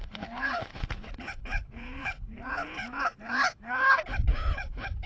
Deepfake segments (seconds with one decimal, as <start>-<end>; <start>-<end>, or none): 0.0-5.1

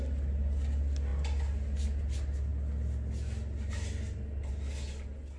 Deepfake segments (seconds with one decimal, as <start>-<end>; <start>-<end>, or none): none

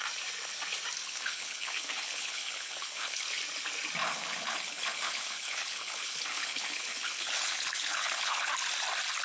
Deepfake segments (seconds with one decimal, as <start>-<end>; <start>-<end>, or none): 1.0-3.2; 4.0-8.5

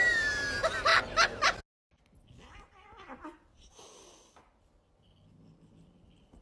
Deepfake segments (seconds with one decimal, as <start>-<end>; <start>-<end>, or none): none